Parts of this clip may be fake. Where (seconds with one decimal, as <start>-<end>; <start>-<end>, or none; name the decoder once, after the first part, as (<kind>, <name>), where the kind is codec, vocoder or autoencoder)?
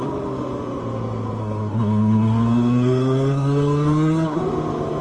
1.4-4.4 (codec, SNAC)